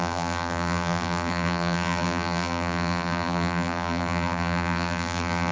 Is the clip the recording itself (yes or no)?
no